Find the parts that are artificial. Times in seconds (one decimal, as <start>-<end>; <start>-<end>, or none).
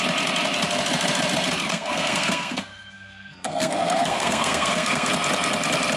1.7-5.1